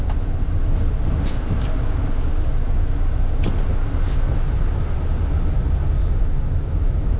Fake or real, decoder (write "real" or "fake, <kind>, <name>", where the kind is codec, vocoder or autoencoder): real